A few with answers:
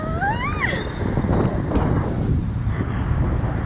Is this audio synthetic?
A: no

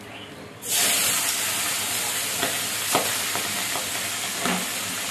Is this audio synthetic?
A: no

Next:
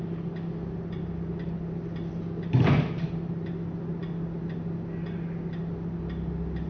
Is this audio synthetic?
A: no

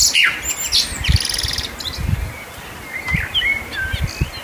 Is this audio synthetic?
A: no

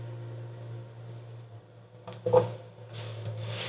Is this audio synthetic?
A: no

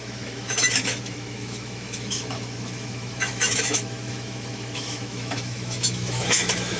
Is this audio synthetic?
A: yes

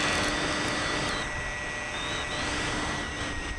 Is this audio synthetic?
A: no